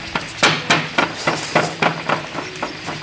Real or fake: real